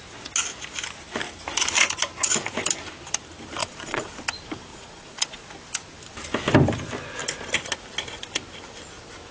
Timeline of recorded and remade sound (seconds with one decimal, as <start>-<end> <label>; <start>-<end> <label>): 0.0-3.6 recorded; 3.6-4.1 remade; 4.1-4.7 recorded; 4.7-5.5 remade; 5.5-9.3 recorded